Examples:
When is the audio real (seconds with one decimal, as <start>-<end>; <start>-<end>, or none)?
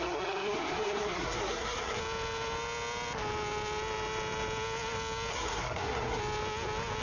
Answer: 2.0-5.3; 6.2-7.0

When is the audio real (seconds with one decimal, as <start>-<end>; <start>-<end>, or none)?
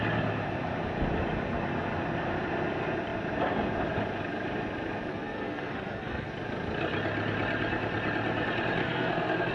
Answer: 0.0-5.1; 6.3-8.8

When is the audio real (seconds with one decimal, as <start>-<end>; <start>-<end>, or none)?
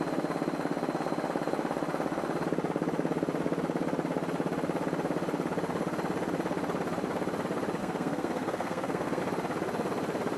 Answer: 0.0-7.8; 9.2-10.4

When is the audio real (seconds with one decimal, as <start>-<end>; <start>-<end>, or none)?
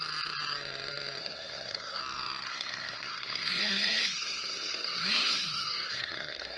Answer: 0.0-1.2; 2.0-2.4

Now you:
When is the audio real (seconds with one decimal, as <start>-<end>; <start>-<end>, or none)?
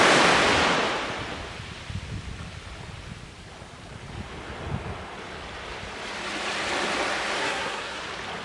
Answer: 0.0-7.4; 8.0-8.4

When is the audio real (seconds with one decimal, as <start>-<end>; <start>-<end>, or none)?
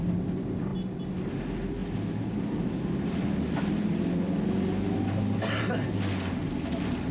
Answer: 0.0-7.1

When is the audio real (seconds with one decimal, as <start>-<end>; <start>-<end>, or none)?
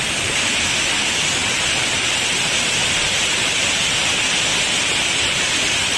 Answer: 0.0-6.0